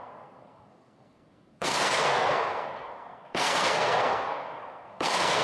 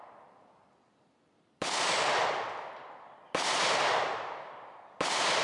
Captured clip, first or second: second